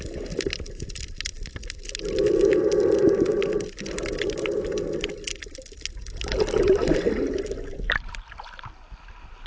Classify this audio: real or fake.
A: real